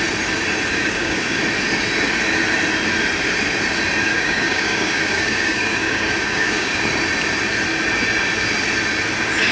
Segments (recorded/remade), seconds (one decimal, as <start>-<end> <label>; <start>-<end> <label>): 0.0-0.7 recorded; 0.7-1.4 remade; 1.4-4.1 recorded; 4.1-6.8 remade; 6.8-9.5 recorded